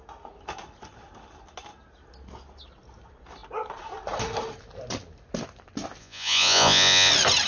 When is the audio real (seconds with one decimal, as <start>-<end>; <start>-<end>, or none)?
0.0-6.0; 7.1-7.5